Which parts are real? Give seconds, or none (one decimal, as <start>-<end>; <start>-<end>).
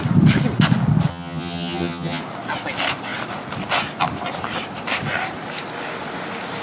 0.0-1.1; 2.2-6.6